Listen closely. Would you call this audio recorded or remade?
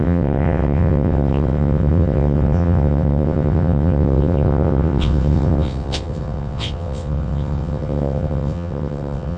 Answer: remade